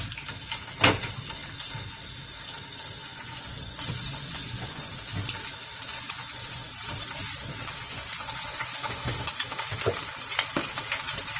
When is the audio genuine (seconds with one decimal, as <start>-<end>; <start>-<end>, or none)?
0.0-3.0; 4.9-5.9; 6.7-7.8; 9.3-11.4